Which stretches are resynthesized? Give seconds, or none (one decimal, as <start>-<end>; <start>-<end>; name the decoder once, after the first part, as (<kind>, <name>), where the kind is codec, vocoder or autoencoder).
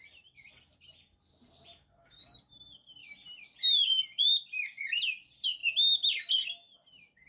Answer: none